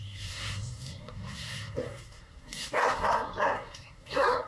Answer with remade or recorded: remade